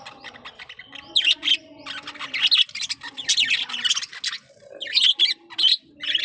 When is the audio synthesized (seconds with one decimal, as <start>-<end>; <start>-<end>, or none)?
none